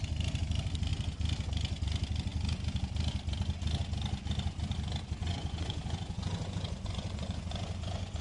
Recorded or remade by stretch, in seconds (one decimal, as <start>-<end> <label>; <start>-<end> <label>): 0.0-5.2 recorded; 5.2-8.2 remade